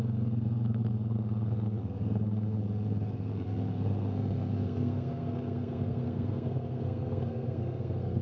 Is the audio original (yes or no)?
no